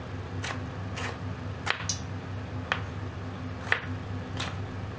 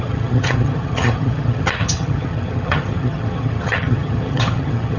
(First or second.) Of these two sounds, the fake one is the second